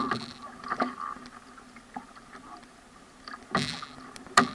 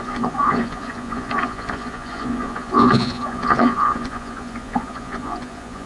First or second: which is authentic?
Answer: first